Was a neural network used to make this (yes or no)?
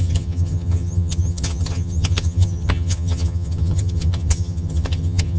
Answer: yes